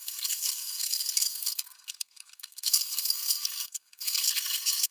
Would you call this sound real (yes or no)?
no